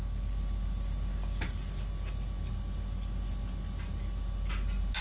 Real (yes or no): yes